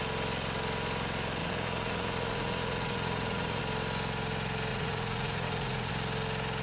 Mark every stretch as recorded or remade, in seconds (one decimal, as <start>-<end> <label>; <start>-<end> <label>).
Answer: 0.0-1.4 recorded; 1.4-3.6 remade; 3.6-4.7 recorded; 4.7-5.9 remade; 5.9-6.6 recorded